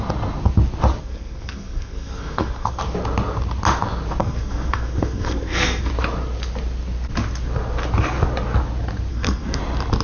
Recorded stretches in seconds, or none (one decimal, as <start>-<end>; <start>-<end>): 0.0-1.0; 2.8-4.2; 5.9-9.1; 9.6-10.0